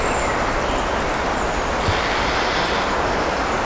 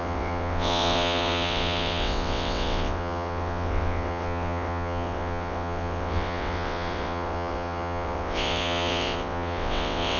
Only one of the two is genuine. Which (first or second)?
first